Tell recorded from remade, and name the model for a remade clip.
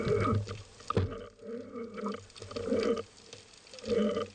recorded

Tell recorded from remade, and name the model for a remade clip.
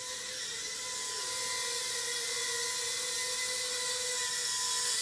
recorded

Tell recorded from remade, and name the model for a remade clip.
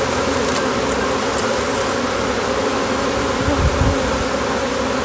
recorded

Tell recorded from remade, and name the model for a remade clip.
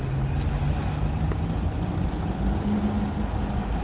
recorded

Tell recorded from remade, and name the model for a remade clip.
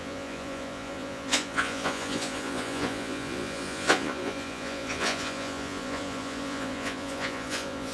remade, vocoder, Vocos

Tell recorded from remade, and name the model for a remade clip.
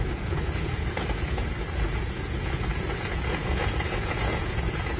remade, vocoder, Vocos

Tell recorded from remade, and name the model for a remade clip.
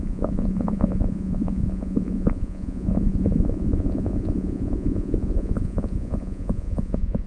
remade, vocoder, Vocos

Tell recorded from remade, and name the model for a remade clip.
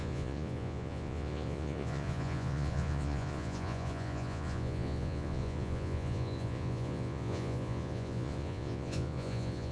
remade, vocoder, Vocos